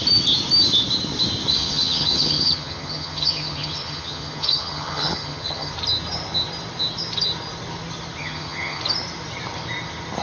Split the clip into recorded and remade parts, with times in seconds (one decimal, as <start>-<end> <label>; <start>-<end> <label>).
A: 0.0-1.5 recorded; 1.5-5.7 remade; 5.7-8.2 recorded; 8.2-8.8 remade; 8.8-10.2 recorded